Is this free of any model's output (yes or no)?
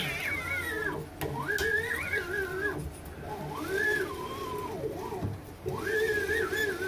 yes